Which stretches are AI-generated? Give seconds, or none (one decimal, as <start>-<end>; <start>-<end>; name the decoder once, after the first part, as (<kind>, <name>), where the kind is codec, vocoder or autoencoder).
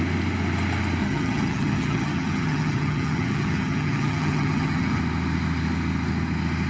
1.0-5.0 (vocoder, HiFi-GAN)